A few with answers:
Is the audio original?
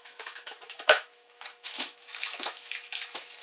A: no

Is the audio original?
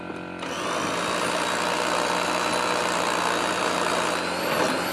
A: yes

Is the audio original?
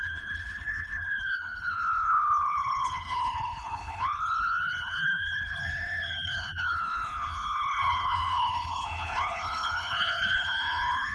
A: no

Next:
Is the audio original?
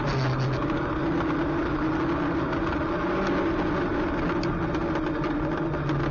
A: yes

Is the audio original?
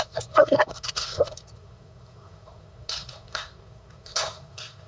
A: no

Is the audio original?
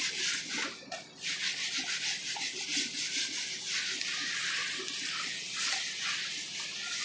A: yes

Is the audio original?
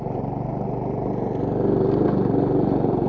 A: yes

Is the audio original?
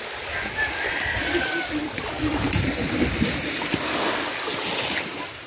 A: yes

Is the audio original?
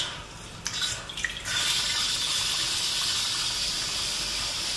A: yes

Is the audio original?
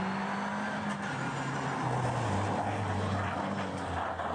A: yes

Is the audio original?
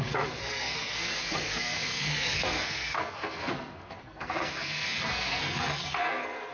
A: no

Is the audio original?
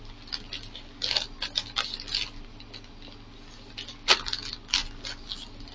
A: yes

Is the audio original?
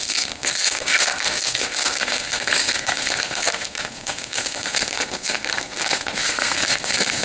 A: no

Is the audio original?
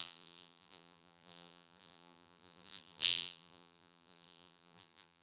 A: no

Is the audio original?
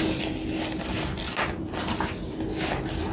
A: yes